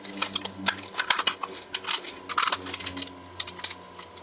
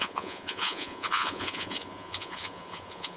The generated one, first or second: second